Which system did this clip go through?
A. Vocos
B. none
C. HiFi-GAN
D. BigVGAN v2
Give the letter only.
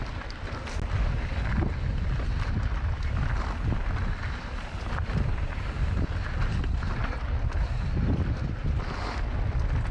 B